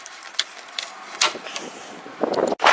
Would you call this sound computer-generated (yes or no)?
no